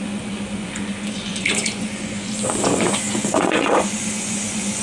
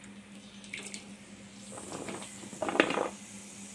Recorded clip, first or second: second